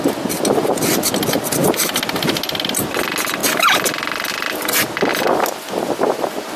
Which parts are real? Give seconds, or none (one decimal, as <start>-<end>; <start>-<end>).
0.0-1.6; 2.4-6.6